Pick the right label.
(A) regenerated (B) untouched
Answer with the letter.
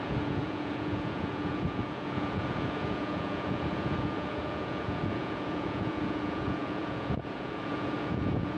A